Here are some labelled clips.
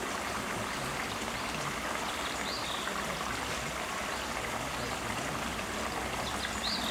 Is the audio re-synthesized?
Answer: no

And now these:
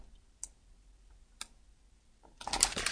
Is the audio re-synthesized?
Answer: no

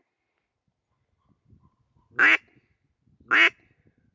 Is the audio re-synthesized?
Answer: no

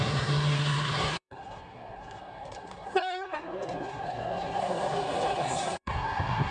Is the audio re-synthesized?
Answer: yes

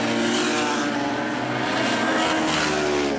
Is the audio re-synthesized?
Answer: no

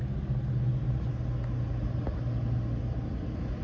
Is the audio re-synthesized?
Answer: no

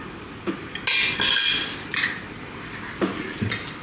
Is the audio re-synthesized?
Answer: no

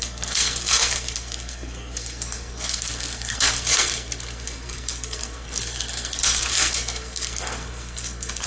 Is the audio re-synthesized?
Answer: yes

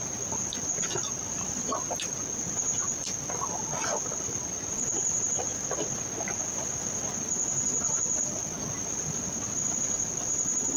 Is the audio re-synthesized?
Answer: no